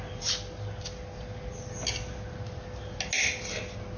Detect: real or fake real